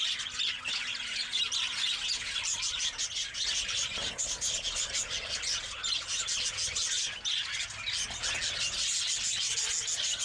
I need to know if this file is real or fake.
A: real